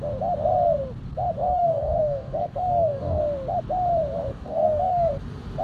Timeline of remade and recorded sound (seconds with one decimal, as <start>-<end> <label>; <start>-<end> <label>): 0.0-1.5 recorded; 1.5-3.2 remade; 3.2-4.3 recorded; 4.3-5.1 remade; 5.1-5.6 recorded